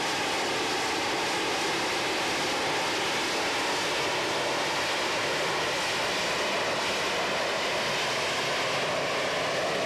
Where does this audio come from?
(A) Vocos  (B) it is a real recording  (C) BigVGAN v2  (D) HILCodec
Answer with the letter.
B